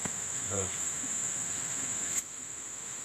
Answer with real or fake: fake